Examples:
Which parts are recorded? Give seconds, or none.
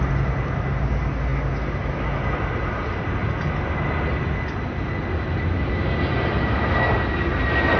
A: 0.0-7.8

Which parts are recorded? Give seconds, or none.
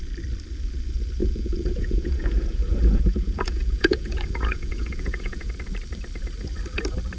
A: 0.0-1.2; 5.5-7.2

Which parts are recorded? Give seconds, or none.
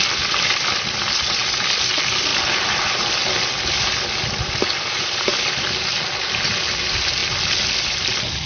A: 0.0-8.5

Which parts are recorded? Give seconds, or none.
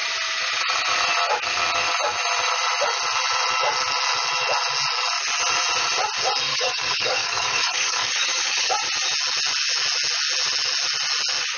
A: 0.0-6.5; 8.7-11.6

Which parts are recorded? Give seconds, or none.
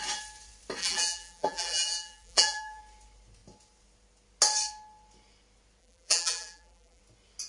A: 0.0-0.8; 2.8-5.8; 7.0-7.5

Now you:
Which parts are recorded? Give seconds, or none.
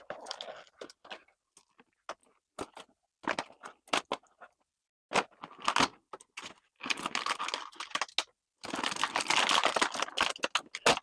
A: 0.0-11.0